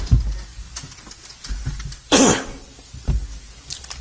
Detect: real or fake real